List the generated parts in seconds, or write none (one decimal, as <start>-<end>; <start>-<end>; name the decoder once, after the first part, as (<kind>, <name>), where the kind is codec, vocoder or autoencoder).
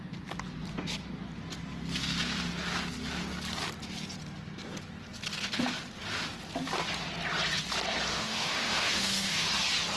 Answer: 8.1-9.5 (autoencoder, DAC-VAE)